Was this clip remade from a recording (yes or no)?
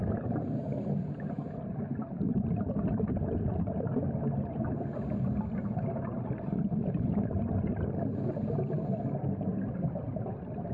no